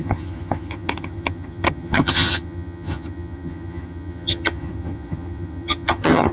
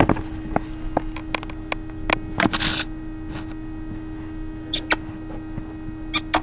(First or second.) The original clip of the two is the second